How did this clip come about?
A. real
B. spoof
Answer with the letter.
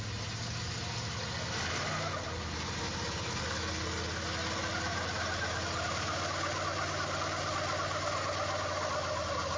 A